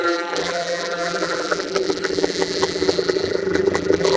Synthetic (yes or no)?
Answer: yes